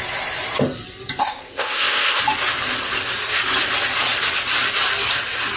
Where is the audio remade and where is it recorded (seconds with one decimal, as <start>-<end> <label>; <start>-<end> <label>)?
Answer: 0.0-1.2 recorded; 1.2-2.2 remade; 2.2-5.6 recorded